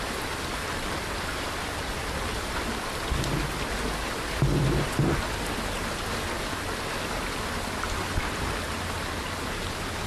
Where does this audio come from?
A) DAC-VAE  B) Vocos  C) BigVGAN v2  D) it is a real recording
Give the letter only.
D